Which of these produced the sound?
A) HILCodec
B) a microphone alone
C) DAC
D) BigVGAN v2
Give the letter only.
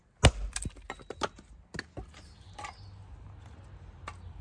B